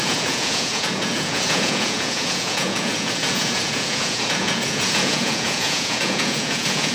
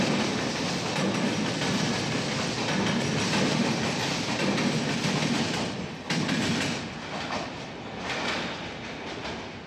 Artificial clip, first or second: first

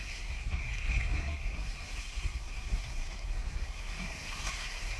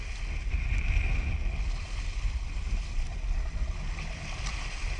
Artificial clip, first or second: first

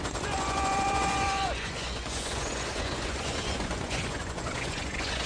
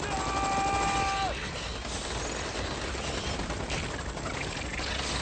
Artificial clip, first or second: first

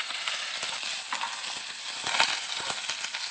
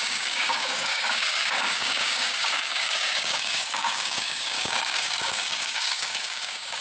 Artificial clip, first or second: second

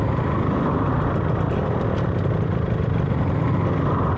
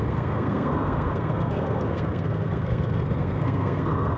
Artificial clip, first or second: second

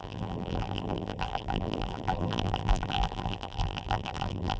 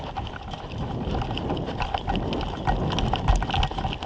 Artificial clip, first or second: first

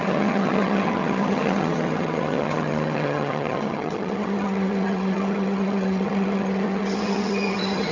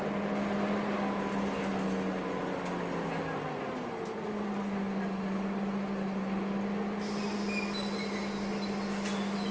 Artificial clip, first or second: first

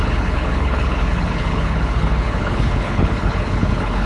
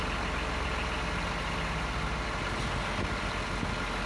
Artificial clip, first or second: first